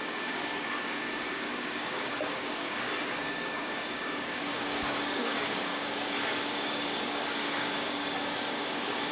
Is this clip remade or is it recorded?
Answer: remade